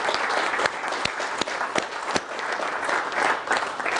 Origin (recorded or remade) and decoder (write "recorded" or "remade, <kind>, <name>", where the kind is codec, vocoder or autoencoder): remade, vocoder, BigVGAN v2